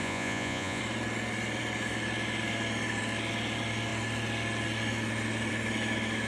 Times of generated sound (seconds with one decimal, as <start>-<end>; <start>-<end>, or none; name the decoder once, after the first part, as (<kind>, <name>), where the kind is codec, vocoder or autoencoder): 0.0-0.8 (vocoder, Vocos)